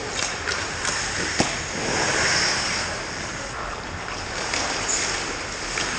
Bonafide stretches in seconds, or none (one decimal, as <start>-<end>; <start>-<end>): 0.0-6.0